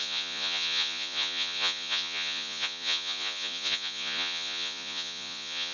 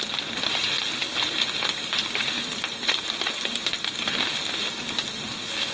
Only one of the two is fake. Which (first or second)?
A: first